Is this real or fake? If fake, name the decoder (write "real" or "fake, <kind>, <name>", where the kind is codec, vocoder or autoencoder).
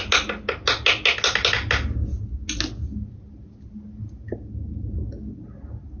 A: real